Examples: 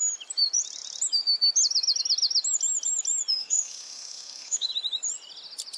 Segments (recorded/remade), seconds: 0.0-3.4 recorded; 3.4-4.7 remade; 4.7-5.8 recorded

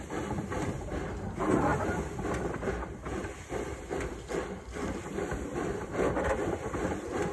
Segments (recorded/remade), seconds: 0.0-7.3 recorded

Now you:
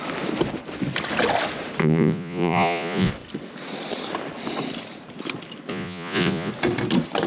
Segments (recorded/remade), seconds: 0.0-1.8 recorded; 1.8-3.1 remade; 3.1-5.7 recorded; 5.7-6.5 remade; 6.5-7.3 recorded

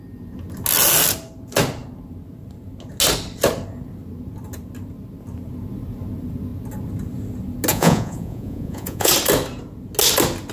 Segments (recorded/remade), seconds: 0.0-7.7 recorded; 7.7-9.1 remade; 9.1-10.5 recorded

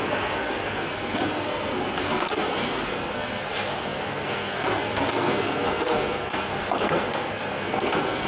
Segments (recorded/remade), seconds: 0.0-8.3 remade